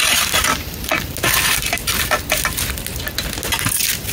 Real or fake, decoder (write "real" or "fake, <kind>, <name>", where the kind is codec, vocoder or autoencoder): real